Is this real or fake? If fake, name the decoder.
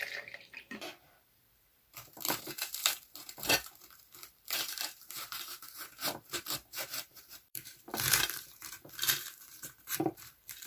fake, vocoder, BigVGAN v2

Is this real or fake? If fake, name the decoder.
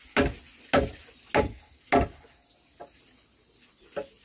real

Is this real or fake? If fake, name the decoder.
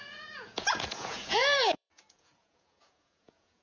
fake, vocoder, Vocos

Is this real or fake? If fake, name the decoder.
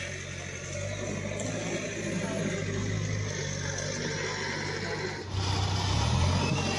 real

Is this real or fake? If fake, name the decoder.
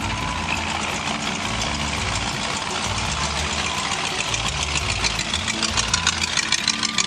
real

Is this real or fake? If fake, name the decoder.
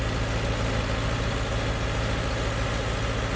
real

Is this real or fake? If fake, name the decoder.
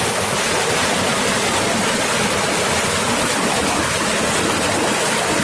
real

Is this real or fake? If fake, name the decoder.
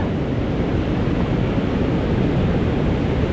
real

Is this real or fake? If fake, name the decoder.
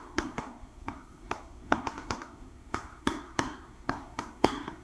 fake, codec, SNAC